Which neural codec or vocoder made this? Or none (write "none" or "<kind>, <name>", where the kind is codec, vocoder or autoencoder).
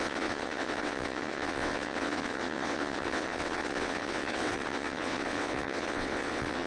vocoder, WaveNeXt